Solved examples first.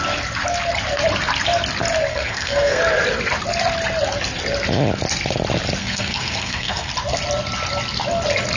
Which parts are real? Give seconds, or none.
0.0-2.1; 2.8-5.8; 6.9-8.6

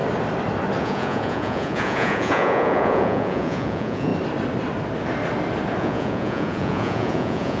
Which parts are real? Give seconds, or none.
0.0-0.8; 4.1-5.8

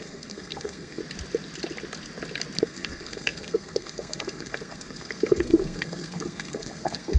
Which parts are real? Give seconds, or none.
1.0-2.6

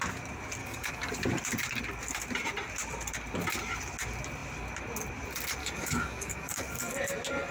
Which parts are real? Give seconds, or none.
0.0-0.6; 1.1-5.6; 6.9-7.5

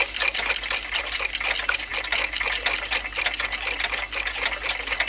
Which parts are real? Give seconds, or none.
0.0-5.1

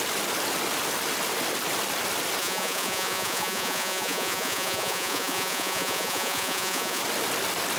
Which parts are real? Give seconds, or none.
0.0-2.4; 7.0-7.8

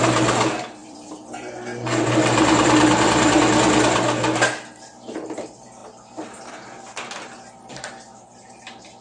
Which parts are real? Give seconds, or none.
0.0-0.8; 3.4-5.8; 6.5-9.0